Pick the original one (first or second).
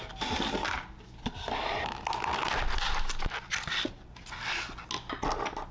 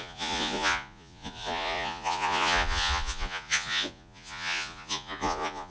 first